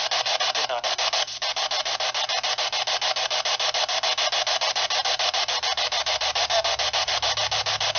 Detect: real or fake real